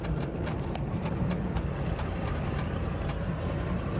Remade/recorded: remade